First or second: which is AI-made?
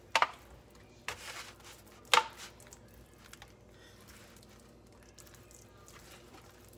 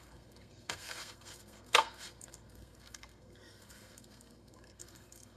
second